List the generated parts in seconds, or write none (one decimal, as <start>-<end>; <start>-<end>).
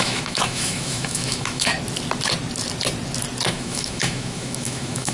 0.0-1.7; 3.5-5.1